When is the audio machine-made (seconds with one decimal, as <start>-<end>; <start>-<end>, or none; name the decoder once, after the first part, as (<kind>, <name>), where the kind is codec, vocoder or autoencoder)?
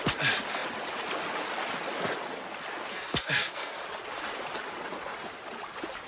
2.9-3.8 (codec, SNAC)